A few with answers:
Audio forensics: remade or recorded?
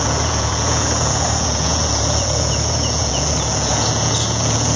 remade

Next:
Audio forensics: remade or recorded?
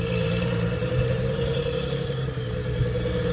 remade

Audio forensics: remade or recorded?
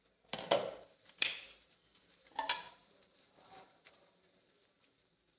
remade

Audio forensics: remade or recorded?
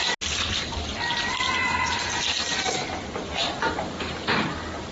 recorded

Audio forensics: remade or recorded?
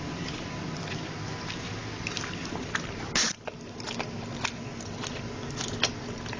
recorded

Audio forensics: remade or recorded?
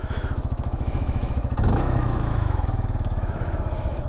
remade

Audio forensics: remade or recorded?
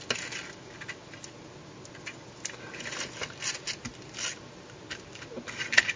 recorded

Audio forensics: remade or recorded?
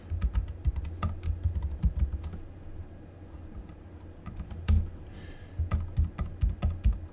recorded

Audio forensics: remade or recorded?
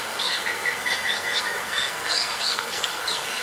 remade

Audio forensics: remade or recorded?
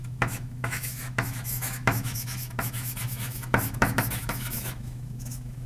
remade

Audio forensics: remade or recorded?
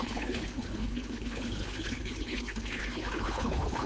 remade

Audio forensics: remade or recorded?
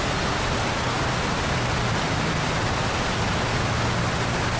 recorded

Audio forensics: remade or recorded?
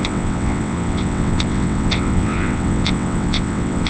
remade